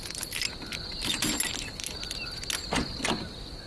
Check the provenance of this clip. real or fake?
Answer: real